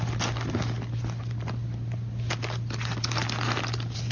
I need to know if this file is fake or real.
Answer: real